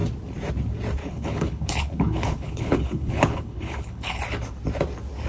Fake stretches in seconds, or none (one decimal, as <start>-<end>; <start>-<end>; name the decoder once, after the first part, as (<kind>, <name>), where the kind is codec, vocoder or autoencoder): 1.0-4.2 (codec, HILCodec)